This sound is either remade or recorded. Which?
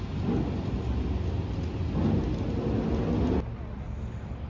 recorded